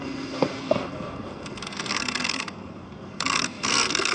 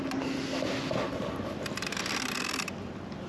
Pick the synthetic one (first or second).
first